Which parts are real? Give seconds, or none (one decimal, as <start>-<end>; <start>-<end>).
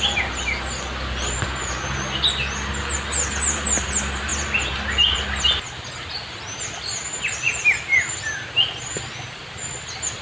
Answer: 0.0-10.2